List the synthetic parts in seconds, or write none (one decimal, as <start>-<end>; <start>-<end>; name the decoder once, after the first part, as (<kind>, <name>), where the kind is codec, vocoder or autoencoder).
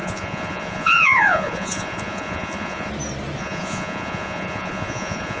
0.0-2.9 (vocoder, Vocos); 3.4-5.4